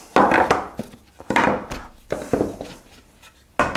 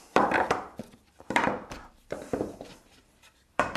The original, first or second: first